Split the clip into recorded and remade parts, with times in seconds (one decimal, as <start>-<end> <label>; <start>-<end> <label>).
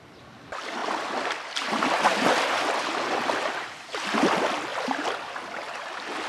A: 0.0-4.7 recorded; 4.7-5.2 remade; 5.2-6.3 recorded